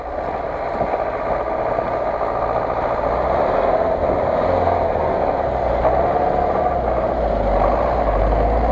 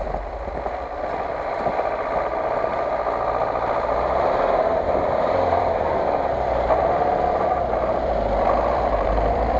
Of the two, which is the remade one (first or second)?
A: second